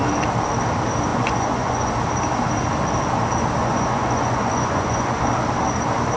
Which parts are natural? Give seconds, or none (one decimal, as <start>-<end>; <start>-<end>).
0.0-1.1; 1.9-3.6; 5.2-6.2